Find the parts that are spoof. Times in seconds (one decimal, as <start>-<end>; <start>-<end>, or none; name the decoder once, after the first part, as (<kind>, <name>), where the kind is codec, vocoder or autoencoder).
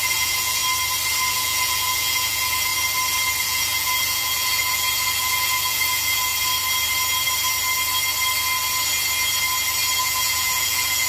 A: 0.0-0.6 (vocoder, Vocos); 1.3-2.7; 3.4-6.3; 10.0-11.1